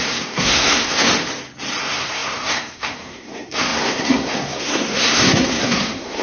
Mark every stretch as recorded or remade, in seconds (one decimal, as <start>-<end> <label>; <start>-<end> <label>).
0.0-1.1 remade; 1.1-1.8 recorded; 1.8-6.2 remade